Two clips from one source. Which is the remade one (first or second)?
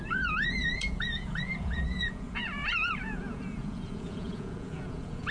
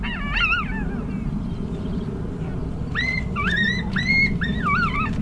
first